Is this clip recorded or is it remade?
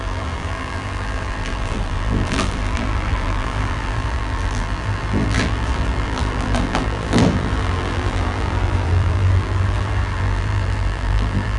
remade